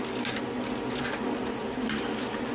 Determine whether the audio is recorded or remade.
recorded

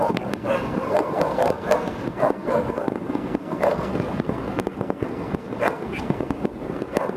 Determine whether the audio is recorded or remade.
remade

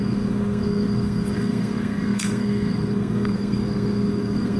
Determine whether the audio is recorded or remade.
remade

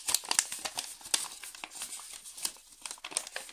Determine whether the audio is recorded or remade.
recorded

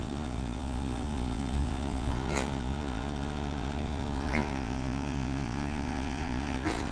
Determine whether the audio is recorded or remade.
remade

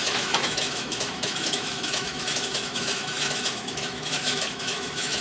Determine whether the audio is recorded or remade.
remade